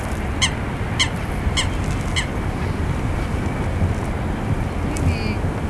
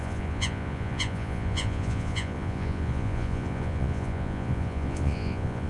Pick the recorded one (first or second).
first